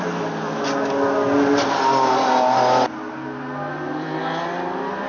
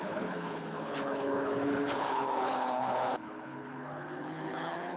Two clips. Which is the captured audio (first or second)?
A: first